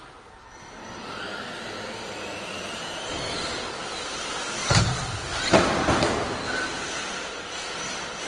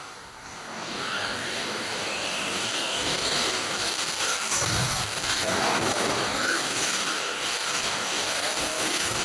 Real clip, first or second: first